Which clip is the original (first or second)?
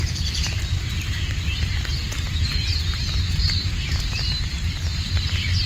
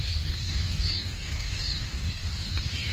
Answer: first